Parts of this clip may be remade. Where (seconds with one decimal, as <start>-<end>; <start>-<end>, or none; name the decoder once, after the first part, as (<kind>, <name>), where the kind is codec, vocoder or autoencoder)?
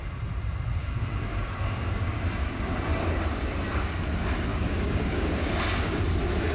0.8-2.5 (codec, DAC); 4.5-6.0